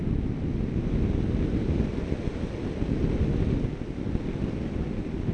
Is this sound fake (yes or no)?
no